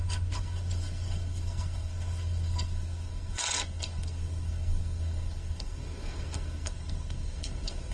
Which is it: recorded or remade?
remade